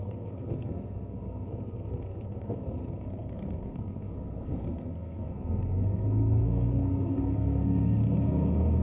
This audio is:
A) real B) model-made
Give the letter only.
B